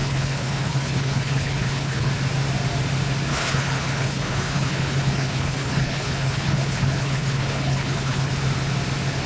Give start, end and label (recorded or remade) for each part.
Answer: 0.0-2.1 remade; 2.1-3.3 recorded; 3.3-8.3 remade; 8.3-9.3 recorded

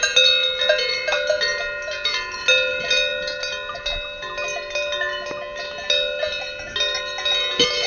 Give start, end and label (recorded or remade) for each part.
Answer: 0.0-7.9 recorded

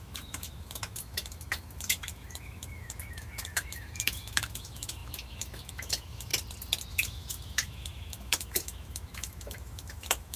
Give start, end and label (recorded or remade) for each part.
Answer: 0.0-6.3 remade; 6.3-6.9 recorded; 6.9-10.4 remade

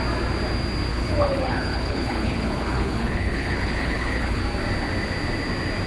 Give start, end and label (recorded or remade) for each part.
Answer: 0.0-0.9 recorded; 0.9-4.4 remade; 4.4-5.9 recorded

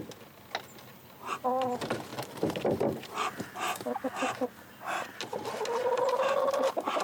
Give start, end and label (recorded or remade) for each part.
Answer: 0.0-7.0 recorded

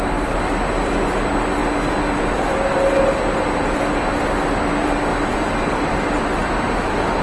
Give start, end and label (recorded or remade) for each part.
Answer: 0.0-7.2 recorded

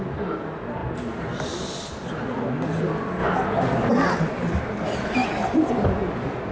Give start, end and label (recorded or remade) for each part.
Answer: 0.0-6.5 recorded

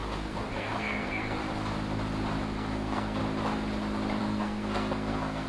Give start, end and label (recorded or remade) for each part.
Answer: 0.0-1.4 remade; 1.4-2.4 recorded; 2.4-3.2 remade; 3.2-4.2 recorded; 4.2-5.5 remade